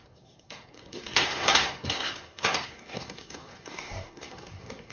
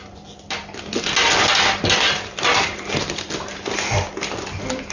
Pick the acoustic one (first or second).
second